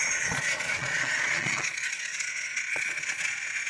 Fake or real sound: fake